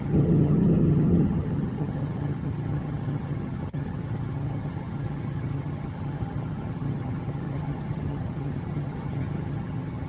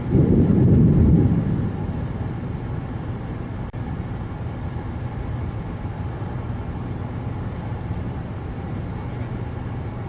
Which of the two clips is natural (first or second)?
second